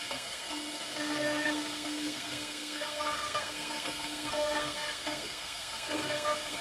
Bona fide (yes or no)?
no